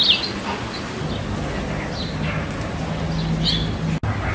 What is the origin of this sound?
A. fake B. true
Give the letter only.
B